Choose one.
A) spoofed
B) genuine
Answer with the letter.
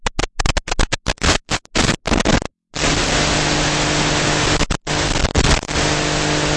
B